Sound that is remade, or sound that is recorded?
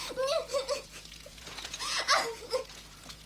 remade